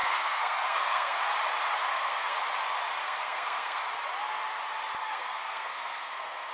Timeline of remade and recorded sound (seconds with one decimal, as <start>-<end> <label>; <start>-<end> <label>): 0.0-1.2 remade; 1.2-1.9 recorded; 1.9-2.4 remade; 2.4-3.0 recorded; 3.0-3.9 remade; 3.9-5.0 recorded; 5.0-6.5 remade